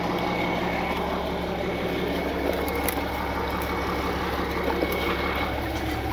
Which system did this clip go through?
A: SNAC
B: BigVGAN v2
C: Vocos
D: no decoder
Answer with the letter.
D